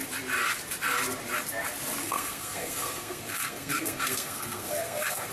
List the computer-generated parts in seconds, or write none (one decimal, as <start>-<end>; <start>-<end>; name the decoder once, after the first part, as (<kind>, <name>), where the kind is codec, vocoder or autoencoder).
2.0-5.3 (codec, SNAC)